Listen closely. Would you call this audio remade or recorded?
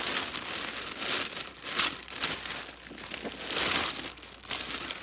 recorded